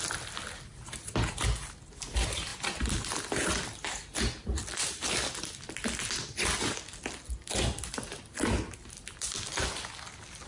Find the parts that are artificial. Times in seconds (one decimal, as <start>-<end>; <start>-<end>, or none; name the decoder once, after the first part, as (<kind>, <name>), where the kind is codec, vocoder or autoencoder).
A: none